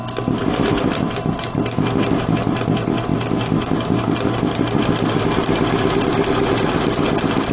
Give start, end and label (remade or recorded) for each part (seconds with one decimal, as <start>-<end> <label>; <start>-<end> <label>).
0.0-7.5 recorded